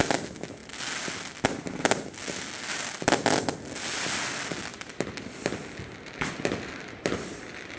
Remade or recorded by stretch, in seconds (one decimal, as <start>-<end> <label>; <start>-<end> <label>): 0.0-7.8 recorded